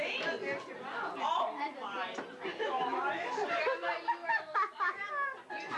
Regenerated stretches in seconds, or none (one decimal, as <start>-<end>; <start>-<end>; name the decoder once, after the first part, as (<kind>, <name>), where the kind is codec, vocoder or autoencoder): 2.6-3.1 (autoencoder, DAC-VAE); 4.2-5.1